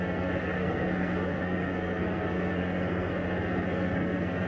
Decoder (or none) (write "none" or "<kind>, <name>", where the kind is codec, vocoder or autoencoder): codec, SNAC